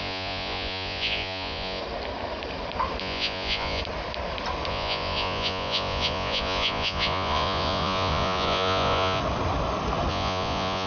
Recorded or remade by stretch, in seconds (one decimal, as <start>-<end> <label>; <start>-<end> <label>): 0.0-1.8 remade; 1.8-3.0 recorded; 3.0-3.8 remade; 3.8-4.7 recorded; 4.7-9.2 remade; 9.2-10.1 recorded; 10.1-10.9 remade